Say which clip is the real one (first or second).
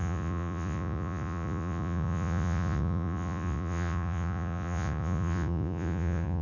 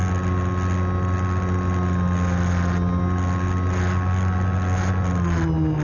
second